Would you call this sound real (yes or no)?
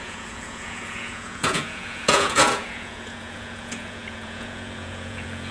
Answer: no